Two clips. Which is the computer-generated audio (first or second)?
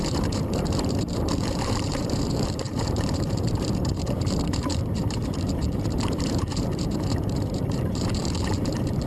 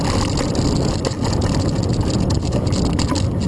first